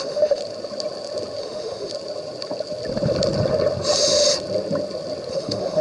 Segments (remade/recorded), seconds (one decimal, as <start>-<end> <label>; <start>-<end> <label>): 0.0-0.4 remade; 0.4-1.4 recorded; 1.4-1.9 remade; 1.9-5.3 recorded; 5.3-5.8 remade